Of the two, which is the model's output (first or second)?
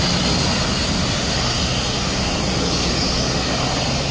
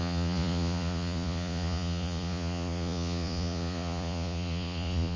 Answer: second